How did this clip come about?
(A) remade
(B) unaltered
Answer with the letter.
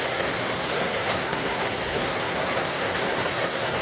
A